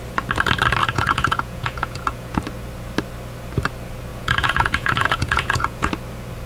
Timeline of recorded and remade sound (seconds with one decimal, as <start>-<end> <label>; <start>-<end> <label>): 0.0-0.8 recorded; 0.8-2.4 remade; 2.4-4.1 recorded; 4.1-5.9 remade; 5.9-6.5 recorded